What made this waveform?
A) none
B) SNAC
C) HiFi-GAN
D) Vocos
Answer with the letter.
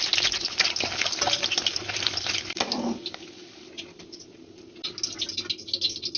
A